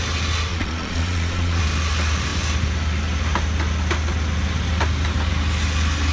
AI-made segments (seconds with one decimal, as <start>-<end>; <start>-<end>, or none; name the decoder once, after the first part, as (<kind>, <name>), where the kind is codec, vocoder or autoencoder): 0.5-1.6 (vocoder, Vocos)